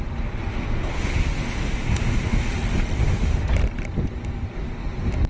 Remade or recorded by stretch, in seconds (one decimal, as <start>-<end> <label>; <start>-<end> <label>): 0.0-0.5 recorded; 0.5-2.4 remade; 2.4-3.0 recorded; 3.0-3.5 remade; 3.5-5.3 recorded